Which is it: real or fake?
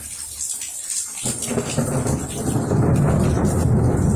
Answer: real